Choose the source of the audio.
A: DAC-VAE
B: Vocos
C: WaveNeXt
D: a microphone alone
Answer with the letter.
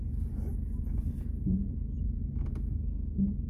D